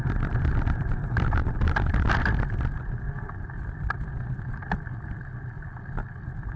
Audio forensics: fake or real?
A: real